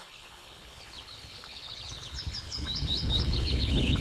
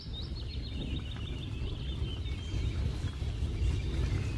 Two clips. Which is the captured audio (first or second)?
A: second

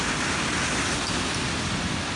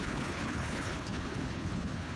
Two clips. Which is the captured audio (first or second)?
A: first